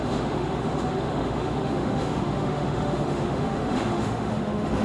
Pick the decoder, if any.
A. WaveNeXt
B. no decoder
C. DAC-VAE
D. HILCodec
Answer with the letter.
C